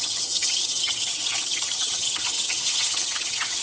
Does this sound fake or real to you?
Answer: fake